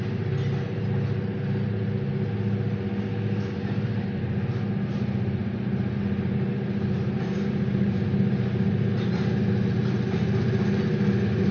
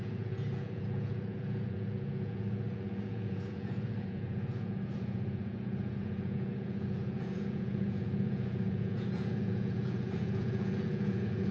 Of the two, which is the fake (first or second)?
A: second